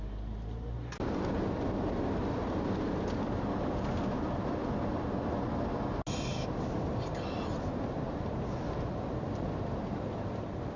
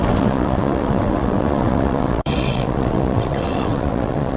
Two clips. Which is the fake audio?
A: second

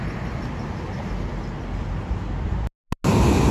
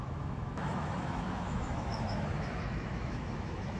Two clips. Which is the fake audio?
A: second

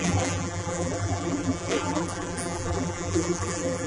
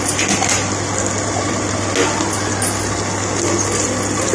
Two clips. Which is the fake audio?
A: first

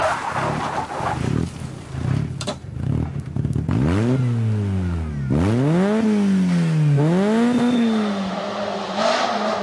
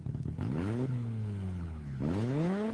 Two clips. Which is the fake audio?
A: second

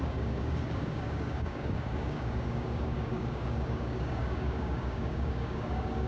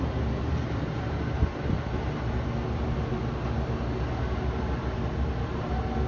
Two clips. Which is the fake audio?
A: first